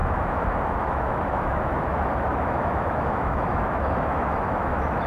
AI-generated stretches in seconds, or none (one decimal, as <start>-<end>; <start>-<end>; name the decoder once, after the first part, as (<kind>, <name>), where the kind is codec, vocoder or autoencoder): 0.0-5.1 (autoencoder, DAC-VAE)